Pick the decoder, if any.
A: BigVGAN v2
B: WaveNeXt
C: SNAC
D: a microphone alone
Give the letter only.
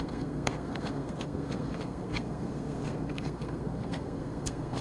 C